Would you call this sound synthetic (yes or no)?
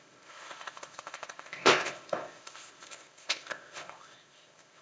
yes